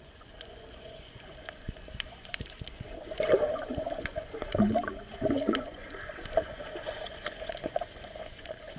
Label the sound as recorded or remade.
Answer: remade